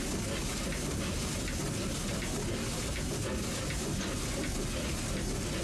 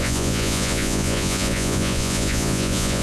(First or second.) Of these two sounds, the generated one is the second